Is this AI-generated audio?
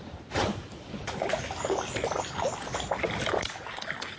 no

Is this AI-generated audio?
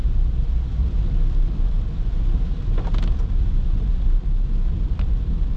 yes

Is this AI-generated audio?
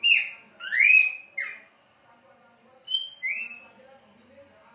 no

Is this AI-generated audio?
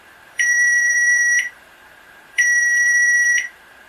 yes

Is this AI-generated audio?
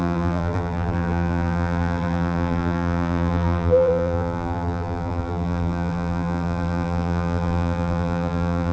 yes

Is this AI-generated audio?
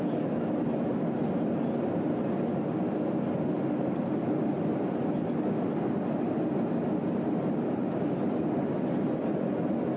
no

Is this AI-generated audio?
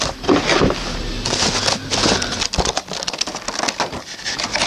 no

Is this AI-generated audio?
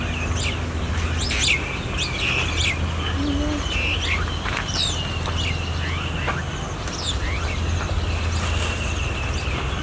no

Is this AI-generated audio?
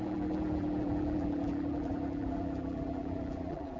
yes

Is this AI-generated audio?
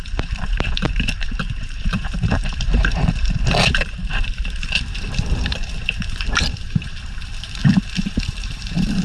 yes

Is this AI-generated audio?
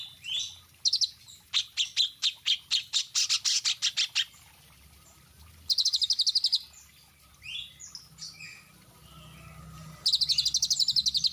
no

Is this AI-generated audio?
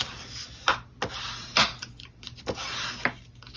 no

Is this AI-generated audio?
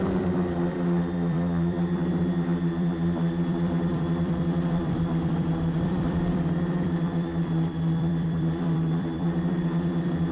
yes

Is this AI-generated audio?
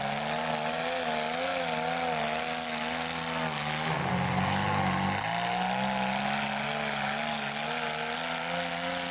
no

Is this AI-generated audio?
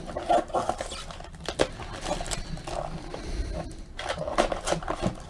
no